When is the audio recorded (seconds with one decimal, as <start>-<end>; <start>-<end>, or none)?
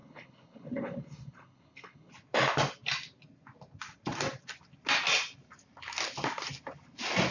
2.1-7.3